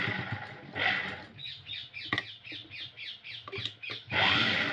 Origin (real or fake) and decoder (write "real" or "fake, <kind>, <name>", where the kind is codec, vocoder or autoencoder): real